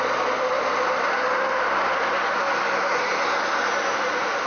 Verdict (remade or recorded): recorded